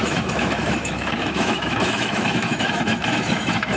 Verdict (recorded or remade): remade